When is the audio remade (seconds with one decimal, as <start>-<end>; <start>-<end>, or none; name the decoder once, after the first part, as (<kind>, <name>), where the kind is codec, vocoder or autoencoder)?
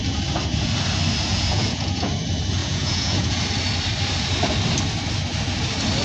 1.3-2.1 (vocoder, Vocos); 2.6-3.4